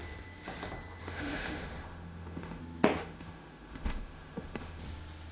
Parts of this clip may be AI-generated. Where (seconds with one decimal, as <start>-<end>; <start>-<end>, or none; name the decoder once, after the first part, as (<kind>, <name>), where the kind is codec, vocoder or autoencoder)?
1.0-2.6 (autoencoder, DAC-VAE); 3.0-4.8